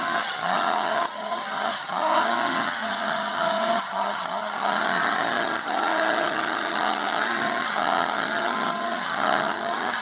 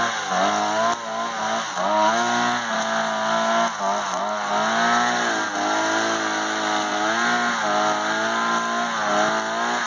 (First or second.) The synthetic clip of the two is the first